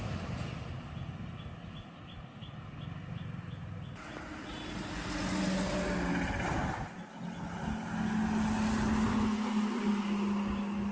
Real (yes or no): yes